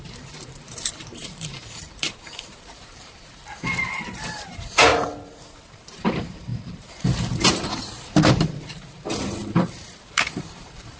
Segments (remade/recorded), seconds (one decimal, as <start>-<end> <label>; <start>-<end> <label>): 0.0-4.9 remade; 4.9-5.7 recorded; 5.7-11.0 remade